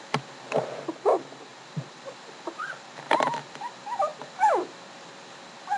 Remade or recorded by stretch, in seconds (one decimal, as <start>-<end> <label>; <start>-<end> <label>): 0.0-5.8 recorded

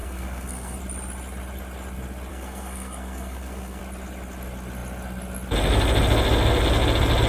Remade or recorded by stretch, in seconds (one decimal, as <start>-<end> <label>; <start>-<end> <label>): 0.0-0.8 remade; 0.8-2.3 recorded; 2.3-3.8 remade; 3.8-7.3 recorded

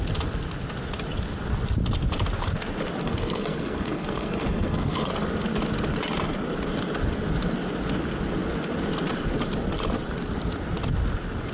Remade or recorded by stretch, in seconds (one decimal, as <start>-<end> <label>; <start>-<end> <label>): 0.0-3.0 recorded; 3.0-5.1 remade; 5.1-11.5 recorded

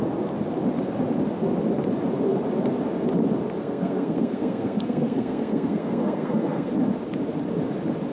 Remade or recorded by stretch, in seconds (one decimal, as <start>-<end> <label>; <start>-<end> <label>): 0.0-3.6 recorded; 3.6-6.7 remade; 6.7-8.1 recorded